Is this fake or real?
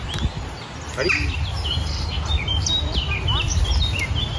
real